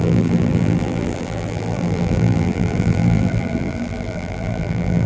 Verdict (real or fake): fake